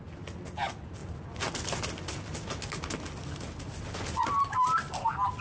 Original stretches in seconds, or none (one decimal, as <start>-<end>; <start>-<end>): 0.0-5.4